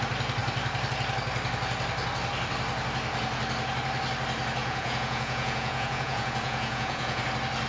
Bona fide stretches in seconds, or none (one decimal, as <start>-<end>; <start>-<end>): 0.0-4.6; 7.2-7.7